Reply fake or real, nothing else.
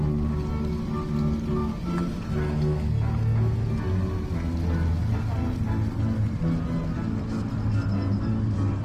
real